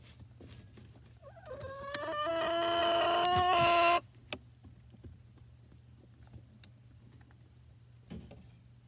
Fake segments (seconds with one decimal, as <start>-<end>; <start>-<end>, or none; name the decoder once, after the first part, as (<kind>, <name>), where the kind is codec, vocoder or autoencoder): none